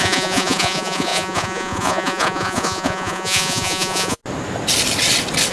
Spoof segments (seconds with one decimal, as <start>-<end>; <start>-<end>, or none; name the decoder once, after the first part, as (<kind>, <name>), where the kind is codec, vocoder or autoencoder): 0.0-4.2 (vocoder, Vocos)